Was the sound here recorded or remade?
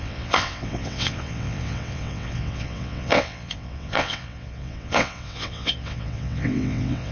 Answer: remade